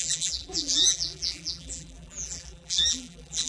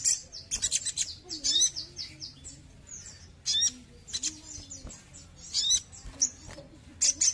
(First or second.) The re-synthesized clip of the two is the first